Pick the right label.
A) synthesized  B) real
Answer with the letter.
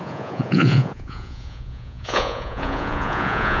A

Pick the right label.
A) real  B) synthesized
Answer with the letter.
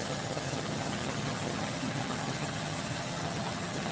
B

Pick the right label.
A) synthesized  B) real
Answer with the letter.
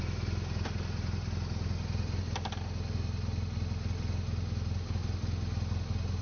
B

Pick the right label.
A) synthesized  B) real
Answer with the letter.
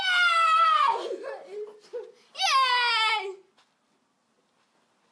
B